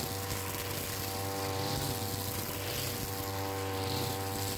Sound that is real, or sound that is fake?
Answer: real